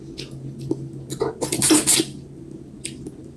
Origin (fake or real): real